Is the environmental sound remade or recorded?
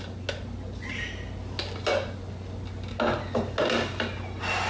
recorded